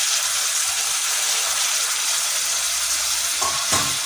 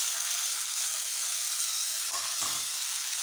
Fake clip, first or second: second